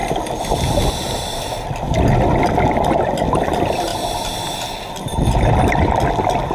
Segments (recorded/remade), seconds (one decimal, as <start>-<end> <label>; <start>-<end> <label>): 0.0-6.5 recorded